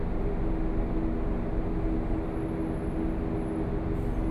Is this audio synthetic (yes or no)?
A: no